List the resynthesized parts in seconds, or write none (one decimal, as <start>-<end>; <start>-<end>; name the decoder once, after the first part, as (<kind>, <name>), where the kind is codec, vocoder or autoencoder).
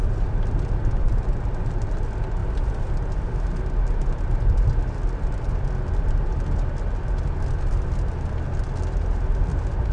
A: none